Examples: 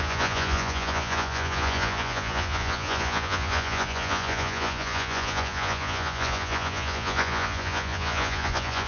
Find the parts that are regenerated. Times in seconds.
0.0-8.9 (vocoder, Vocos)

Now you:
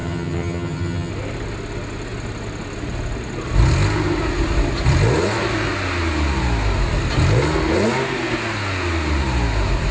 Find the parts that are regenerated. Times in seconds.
0.0-1.1 (vocoder, HiFi-GAN)

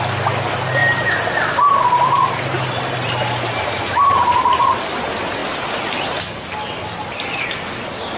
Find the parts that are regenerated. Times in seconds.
0.8-4.6 (vocoder, BigVGAN v2)

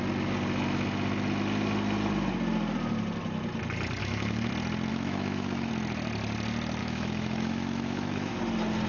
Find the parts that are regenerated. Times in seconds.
4.0-4.5 (autoencoder, DAC-VAE); 4.9-5.7; 6.8-8.3

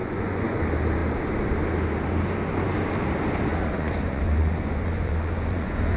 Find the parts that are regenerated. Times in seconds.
0.0-0.6 (vocoder, Vocos); 3.5-6.0

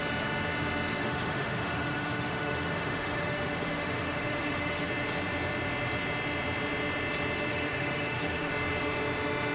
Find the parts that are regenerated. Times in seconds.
1.0-4.9 (autoencoder, DAC-VAE); 7.5-8.5